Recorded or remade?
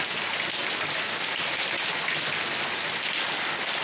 recorded